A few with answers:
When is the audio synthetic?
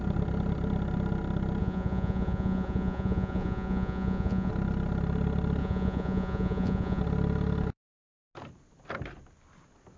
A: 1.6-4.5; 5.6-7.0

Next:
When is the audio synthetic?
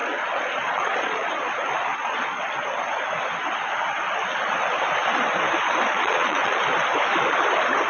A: 0.0-1.3; 1.9-2.5; 5.9-6.6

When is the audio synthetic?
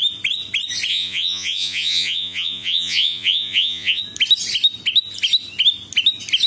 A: 0.9-4.0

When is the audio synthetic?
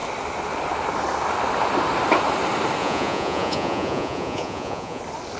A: 2.8-5.0